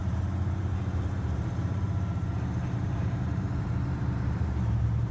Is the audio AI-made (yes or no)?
yes